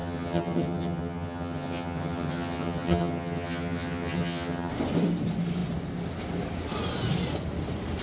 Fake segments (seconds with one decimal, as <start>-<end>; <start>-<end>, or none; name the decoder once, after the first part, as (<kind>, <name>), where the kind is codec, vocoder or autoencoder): 0.0-4.7 (vocoder, HiFi-GAN)